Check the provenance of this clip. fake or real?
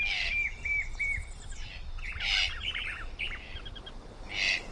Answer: fake